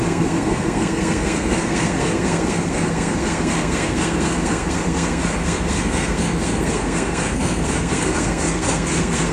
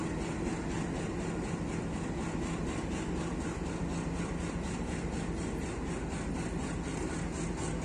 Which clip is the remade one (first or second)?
first